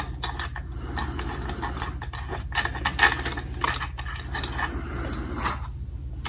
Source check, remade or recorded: recorded